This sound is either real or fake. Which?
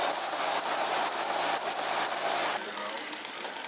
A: real